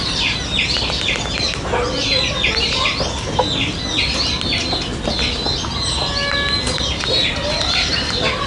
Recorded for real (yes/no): yes